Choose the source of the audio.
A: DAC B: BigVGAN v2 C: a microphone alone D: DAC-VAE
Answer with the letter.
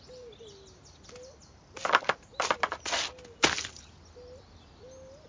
C